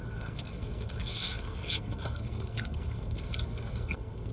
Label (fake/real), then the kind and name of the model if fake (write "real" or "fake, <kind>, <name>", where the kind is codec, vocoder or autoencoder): fake, codec, SNAC